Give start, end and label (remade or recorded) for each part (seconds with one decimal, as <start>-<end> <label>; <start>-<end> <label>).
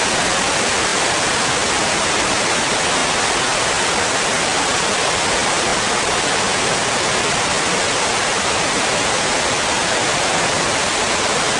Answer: 0.0-11.6 recorded